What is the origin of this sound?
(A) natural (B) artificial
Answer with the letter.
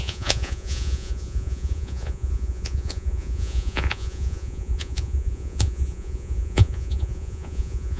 B